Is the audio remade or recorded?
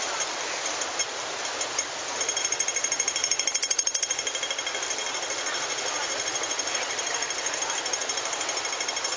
remade